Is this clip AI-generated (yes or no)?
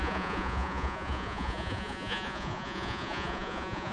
yes